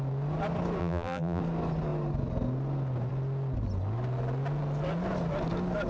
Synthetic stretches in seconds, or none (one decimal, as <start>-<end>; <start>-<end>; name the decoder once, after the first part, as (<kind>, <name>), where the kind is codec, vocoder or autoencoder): 0.8-1.4 (vocoder, BigVGAN v2)